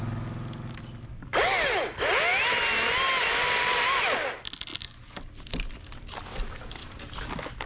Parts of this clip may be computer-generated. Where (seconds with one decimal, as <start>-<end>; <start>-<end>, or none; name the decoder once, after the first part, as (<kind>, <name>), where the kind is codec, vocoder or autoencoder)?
none